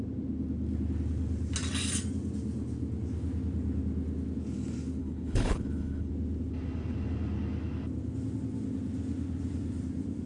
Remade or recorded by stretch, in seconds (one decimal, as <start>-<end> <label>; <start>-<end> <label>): 0.0-5.0 recorded; 5.0-6.1 remade; 6.1-10.3 recorded